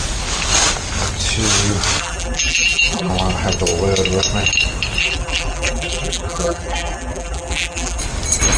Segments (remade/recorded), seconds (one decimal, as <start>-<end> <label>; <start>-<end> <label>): 0.0-2.0 recorded; 2.0-3.1 remade; 3.1-5.0 recorded; 5.0-8.0 remade; 8.0-8.6 recorded